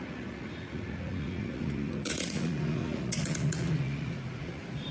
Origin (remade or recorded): remade